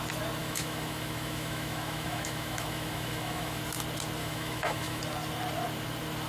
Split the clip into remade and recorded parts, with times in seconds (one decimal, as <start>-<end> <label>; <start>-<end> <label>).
0.0-0.4 recorded; 0.4-3.6 remade; 3.6-4.2 recorded; 4.2-5.0 remade; 5.0-6.3 recorded